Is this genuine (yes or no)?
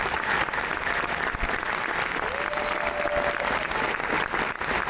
yes